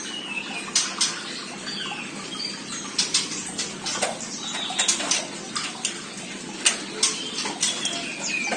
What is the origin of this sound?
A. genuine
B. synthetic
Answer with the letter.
A